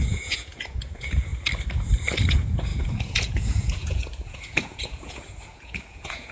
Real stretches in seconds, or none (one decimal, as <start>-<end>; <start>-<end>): 1.3-2.3